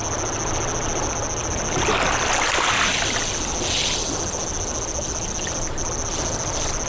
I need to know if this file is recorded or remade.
recorded